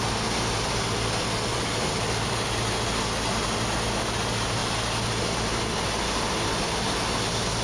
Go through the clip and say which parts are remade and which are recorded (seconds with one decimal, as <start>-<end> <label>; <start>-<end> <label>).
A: 0.0-1.5 recorded; 1.5-2.3 remade; 2.3-7.6 recorded

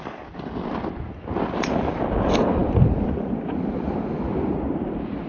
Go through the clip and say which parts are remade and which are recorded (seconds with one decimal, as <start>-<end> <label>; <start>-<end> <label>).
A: 0.0-5.3 remade